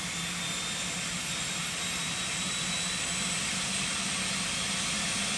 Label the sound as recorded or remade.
recorded